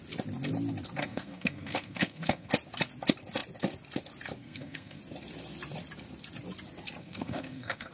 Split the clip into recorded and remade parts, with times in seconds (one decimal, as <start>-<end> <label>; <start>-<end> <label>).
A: 0.0-1.0 recorded; 1.0-2.5 remade; 2.5-4.4 recorded; 4.4-5.0 remade; 5.0-7.0 recorded; 7.0-7.9 remade